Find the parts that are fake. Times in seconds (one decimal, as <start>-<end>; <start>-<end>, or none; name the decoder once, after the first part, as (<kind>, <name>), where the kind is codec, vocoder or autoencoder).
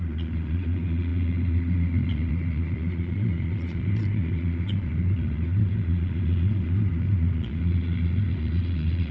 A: 0.0-9.1 (vocoder, Vocos)